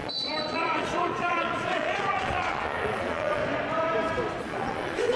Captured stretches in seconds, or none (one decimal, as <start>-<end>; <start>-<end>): 3.4-4.4